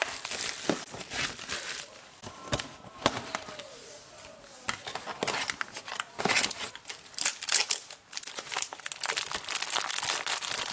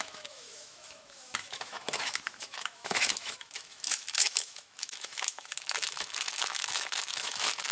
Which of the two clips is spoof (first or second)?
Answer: second